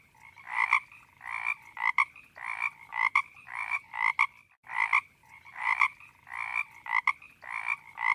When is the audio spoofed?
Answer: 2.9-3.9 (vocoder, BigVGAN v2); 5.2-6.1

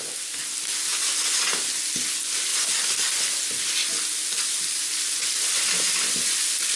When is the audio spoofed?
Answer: none

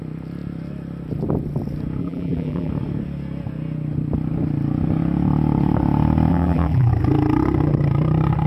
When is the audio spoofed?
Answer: 2.0-2.7 (vocoder, BigVGAN v2); 6.3-6.9

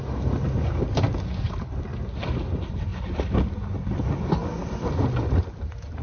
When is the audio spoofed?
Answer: none

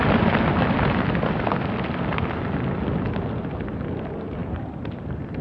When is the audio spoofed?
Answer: 4.4-5.0 (vocoder, BigVGAN v2)

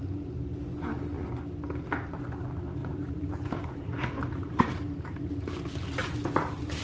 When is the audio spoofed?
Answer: 2.8-5.5 (vocoder, BigVGAN v2); 6.0-6.8

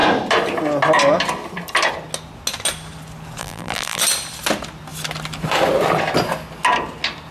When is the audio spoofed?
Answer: 3.4-4.0 (vocoder, BigVGAN v2)